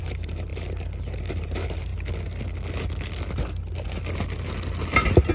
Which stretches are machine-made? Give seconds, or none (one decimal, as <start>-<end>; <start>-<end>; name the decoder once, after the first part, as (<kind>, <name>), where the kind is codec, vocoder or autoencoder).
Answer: 0.0-1.9 (vocoder, BigVGAN v2)